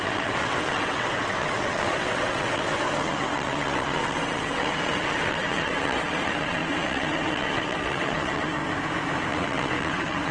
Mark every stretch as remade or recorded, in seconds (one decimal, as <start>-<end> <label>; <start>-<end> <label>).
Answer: 0.0-8.6 remade; 8.6-9.3 recorded; 9.3-10.3 remade